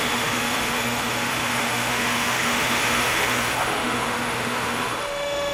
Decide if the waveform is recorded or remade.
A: remade